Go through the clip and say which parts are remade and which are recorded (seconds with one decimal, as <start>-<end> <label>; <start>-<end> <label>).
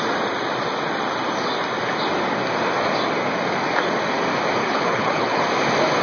0.0-4.6 recorded; 4.6-5.4 remade; 5.4-6.0 recorded